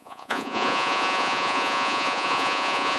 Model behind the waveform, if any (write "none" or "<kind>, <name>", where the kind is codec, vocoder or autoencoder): vocoder, Vocos